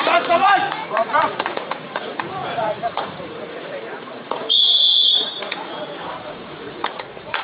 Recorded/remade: remade